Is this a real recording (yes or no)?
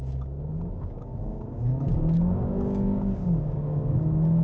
no